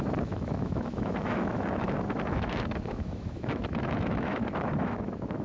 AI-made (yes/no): yes